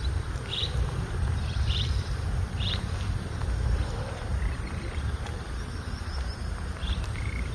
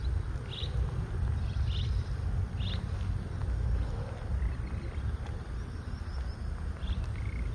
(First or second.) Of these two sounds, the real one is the second